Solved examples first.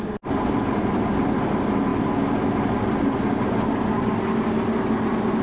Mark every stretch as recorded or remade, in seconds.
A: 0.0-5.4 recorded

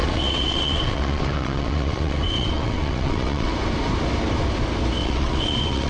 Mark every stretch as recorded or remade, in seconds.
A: 0.0-3.5 remade; 3.5-5.0 recorded; 5.0-5.9 remade

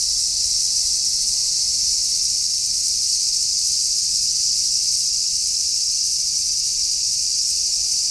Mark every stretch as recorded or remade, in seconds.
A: 0.0-1.4 remade; 1.4-1.9 recorded; 1.9-8.1 remade

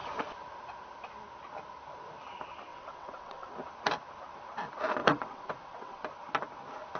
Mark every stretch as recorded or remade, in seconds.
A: 0.0-2.7 recorded; 2.7-3.5 remade; 3.5-5.0 recorded; 5.0-6.0 remade; 6.0-7.0 recorded

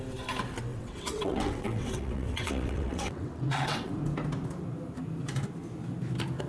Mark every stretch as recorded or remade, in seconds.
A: 0.0-0.7 recorded; 0.7-3.9 remade; 3.9-6.5 recorded